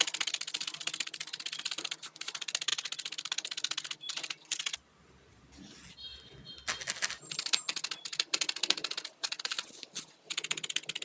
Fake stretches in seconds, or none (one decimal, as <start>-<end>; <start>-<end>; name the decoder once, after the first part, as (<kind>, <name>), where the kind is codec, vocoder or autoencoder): none

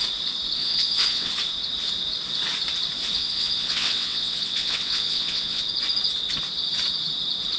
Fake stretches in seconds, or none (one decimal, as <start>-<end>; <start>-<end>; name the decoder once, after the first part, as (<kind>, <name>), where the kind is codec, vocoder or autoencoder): 0.6-1.3 (vocoder, WaveNeXt); 3.2-5.6

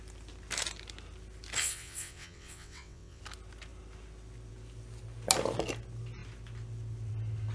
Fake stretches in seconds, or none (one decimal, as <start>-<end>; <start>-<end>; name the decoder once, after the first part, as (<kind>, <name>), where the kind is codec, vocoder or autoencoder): 1.6-3.2 (vocoder, WaveNeXt)

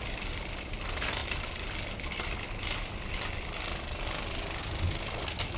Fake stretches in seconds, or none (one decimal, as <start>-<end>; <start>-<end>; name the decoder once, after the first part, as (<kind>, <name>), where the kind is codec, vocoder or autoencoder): none